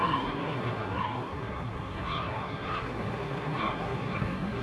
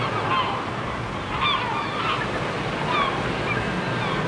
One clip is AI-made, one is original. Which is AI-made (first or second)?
first